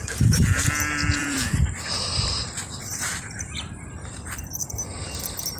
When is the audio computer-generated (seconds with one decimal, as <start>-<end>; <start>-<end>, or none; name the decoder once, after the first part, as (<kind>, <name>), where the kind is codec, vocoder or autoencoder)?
1.2-4.6 (vocoder, BigVGAN v2)